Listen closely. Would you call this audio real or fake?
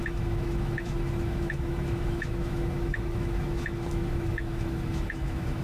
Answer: fake